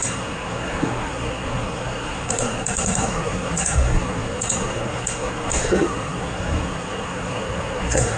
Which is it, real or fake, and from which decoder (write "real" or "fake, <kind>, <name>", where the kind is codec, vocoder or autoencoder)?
fake, codec, SNAC